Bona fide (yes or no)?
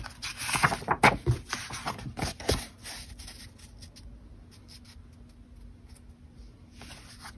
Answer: yes